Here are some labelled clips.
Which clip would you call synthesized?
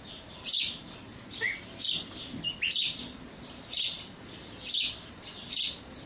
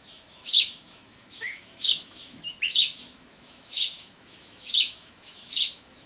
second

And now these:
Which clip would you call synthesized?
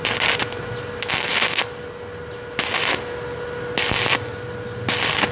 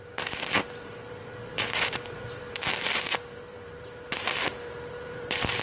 second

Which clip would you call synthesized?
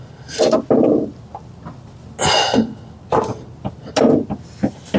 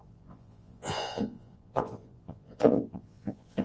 second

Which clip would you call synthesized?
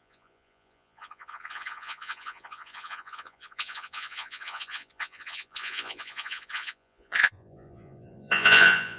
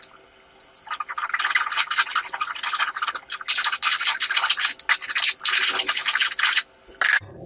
first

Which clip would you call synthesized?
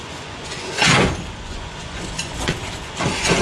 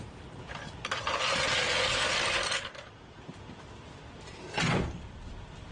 first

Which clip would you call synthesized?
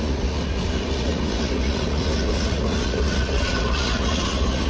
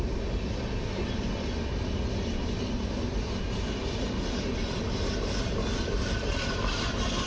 first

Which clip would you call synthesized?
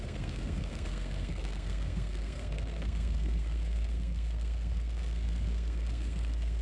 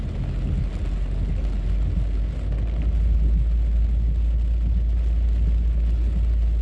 first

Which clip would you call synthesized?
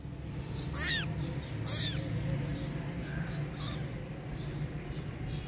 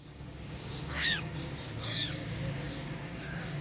second